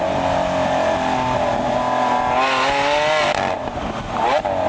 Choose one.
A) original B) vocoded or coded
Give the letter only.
A